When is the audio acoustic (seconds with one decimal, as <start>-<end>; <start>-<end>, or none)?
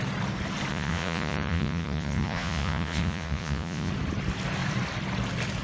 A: 0.0-0.7; 3.9-5.6